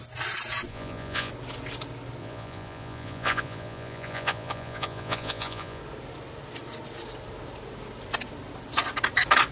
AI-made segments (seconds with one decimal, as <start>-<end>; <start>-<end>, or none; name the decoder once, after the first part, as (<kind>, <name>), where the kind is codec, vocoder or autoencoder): 0.7-1.3 (vocoder, Vocos); 2.2-5.8